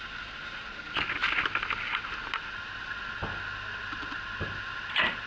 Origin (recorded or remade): recorded